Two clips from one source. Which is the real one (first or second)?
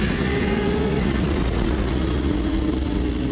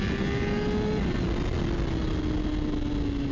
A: second